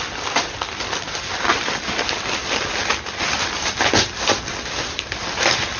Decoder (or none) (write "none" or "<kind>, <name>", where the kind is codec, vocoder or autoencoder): none